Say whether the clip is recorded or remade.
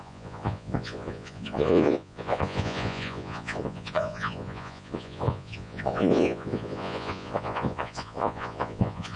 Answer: remade